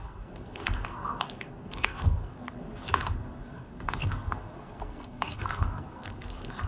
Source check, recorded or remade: remade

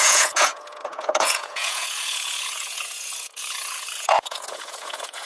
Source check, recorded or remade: remade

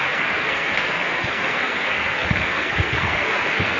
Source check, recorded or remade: remade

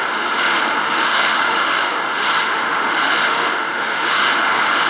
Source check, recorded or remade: remade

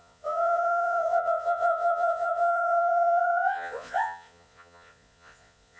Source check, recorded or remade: remade